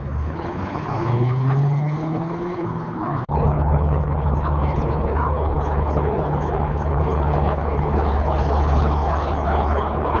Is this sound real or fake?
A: fake